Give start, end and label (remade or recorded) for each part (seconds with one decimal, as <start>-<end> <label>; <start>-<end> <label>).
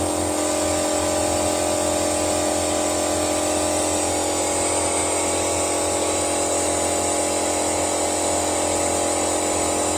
0.0-10.0 recorded